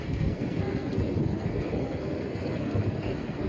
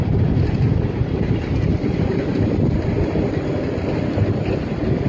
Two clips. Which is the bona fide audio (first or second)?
second